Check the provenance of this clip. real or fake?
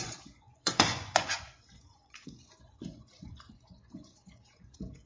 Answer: fake